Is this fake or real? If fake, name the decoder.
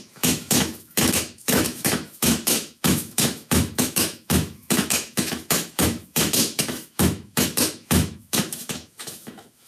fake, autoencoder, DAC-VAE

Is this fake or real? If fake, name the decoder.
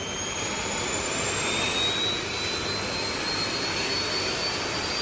real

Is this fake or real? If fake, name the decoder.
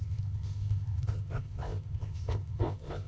fake, codec, ZipCodec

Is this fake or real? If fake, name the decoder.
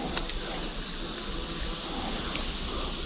real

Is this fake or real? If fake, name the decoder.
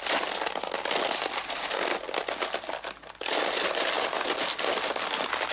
real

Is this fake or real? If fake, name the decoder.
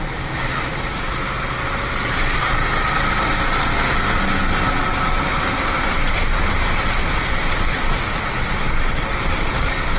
real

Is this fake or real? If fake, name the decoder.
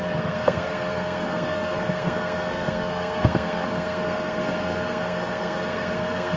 fake, codec, SNAC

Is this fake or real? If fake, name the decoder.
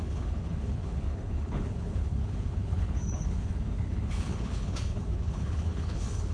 fake, codec, HILCodec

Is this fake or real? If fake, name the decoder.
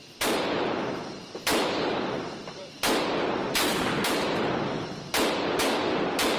real